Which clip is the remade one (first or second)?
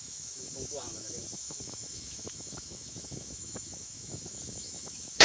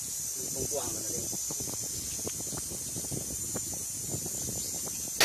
first